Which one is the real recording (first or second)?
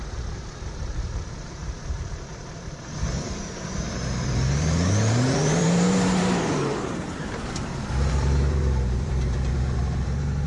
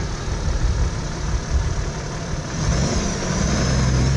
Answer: second